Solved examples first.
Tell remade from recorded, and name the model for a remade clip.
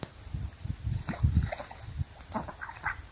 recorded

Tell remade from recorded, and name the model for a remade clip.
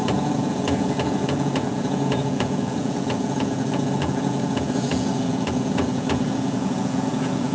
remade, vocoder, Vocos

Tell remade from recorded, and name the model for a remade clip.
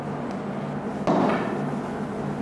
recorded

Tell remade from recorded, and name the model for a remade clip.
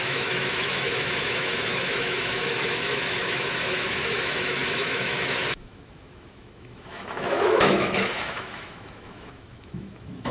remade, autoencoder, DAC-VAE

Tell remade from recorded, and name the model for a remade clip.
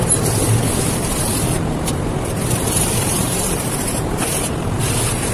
remade, vocoder, BigVGAN v2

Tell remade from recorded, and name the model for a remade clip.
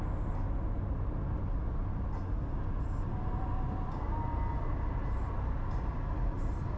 recorded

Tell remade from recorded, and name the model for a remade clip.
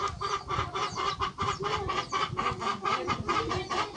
remade, vocoder, BigVGAN v2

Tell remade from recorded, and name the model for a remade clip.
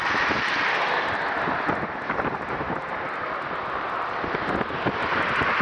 recorded